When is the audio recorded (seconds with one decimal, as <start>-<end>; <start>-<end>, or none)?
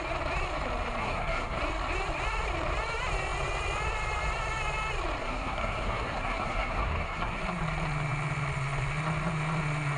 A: 0.0-1.0; 1.6-5.2; 7.4-10.0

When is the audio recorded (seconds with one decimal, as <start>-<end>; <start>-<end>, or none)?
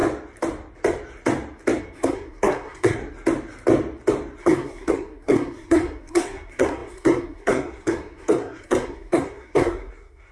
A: 0.0-1.8; 3.0-4.4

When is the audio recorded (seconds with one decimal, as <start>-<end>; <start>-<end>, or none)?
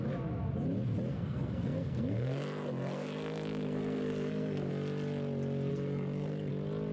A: 0.0-1.1; 4.7-5.7; 6.5-6.9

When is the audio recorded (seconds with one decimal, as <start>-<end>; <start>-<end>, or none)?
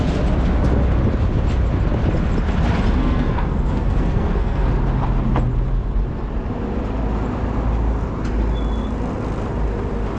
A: 0.0-3.0; 4.7-10.2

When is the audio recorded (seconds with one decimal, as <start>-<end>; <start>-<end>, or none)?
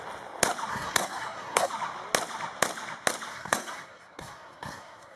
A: 0.0-0.7; 1.7-3.3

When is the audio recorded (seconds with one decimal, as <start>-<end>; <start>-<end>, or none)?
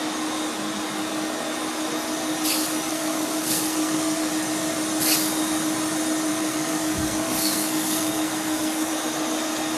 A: 0.0-2.9; 4.3-6.3; 8.9-9.8